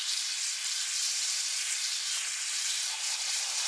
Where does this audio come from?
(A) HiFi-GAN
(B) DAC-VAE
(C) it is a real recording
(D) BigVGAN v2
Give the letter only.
D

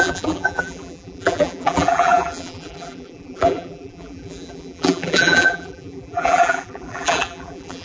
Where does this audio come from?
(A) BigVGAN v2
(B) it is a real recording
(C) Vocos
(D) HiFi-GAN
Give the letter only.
A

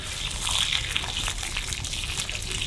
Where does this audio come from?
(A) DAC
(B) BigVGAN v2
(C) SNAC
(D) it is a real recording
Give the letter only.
D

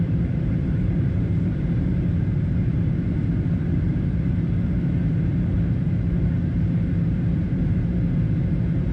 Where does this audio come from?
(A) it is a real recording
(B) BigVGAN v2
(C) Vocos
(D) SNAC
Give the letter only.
B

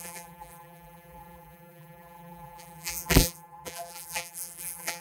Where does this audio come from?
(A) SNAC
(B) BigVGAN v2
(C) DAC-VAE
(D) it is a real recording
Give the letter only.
B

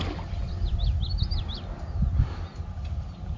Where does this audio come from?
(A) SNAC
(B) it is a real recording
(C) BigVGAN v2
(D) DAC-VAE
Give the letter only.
B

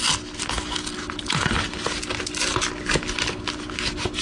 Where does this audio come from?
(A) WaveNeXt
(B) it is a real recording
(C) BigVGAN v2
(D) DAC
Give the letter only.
B